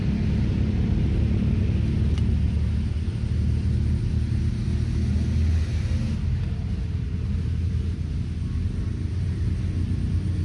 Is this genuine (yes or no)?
yes